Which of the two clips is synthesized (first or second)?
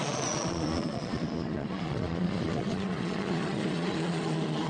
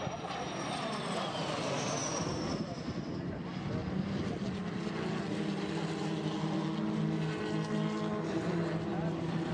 first